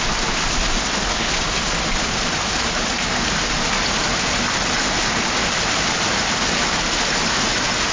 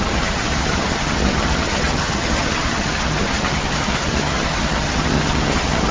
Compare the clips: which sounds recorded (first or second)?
first